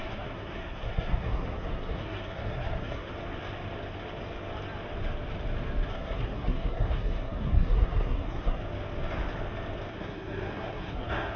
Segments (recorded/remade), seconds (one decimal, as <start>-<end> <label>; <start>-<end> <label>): 0.0-3.1 remade; 3.1-5.9 recorded; 5.9-8.6 remade; 8.6-9.9 recorded; 9.9-11.4 remade